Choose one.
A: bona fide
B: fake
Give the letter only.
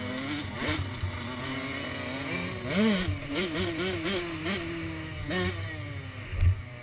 A